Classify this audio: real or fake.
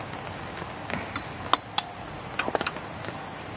real